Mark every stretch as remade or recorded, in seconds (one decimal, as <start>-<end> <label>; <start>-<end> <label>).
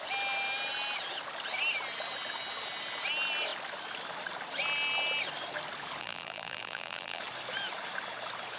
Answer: 0.0-6.0 recorded; 6.0-7.2 remade; 7.2-8.6 recorded